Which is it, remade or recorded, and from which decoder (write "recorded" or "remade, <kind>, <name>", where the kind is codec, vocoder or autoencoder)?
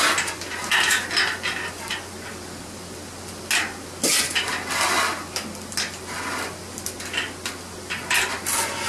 recorded